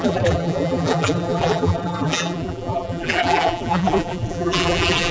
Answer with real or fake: fake